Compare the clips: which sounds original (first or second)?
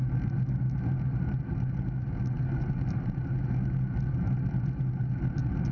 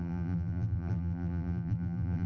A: first